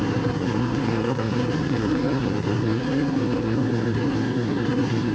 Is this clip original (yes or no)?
no